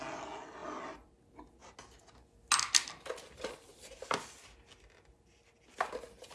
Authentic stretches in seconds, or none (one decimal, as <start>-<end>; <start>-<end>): 0.0-6.3

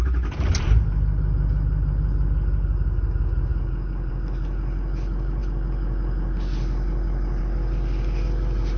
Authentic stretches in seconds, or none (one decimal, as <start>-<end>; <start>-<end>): 0.0-8.8

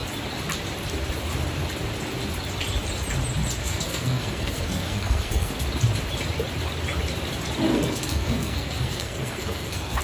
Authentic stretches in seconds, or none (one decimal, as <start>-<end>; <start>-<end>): 0.0-3.6; 5.5-7.7

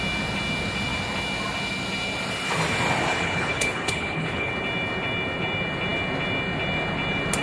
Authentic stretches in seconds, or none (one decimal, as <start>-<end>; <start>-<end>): 0.0-3.1; 4.5-7.4

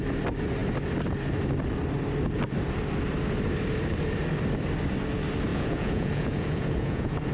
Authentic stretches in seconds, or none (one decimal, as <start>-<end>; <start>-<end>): 0.0-5.5

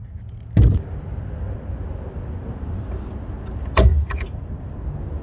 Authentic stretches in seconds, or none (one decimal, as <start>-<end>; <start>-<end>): 0.0-5.2

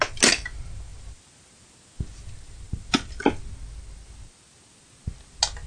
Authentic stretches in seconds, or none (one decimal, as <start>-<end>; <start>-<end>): 0.0-5.7

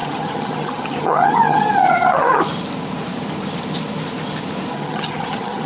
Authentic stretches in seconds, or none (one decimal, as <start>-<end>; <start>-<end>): 2.4-4.7